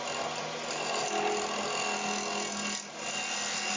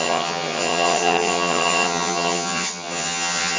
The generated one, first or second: second